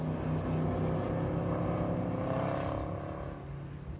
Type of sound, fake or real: real